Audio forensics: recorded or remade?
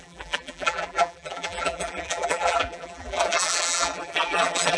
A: remade